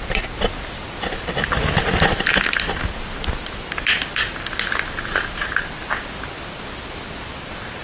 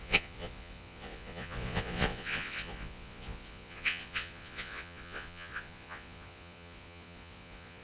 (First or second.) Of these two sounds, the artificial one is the second